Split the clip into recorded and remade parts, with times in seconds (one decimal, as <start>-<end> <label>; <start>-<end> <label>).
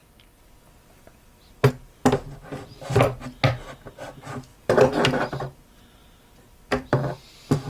0.0-1.7 remade; 1.7-4.5 recorded; 4.5-5.3 remade; 5.3-6.0 recorded; 6.0-7.2 remade; 7.2-7.7 recorded